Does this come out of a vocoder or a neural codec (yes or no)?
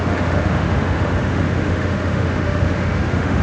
yes